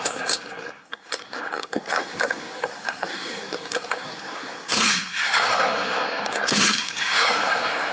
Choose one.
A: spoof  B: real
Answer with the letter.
A